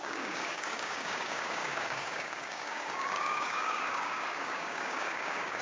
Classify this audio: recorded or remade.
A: remade